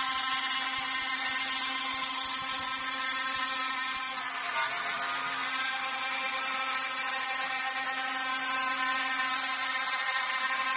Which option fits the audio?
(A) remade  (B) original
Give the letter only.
B